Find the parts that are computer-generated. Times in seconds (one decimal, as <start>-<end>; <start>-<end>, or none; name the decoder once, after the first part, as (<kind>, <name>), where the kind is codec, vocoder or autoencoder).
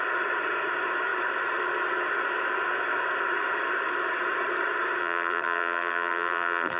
5.0-6.8 (vocoder, BigVGAN v2)